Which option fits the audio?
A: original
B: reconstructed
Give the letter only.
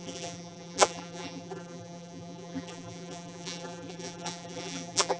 B